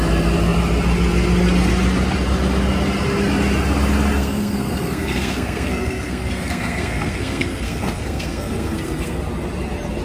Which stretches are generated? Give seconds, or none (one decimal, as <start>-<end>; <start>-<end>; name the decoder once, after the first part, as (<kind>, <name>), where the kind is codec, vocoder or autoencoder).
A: 4.2-9.2 (codec, SNAC)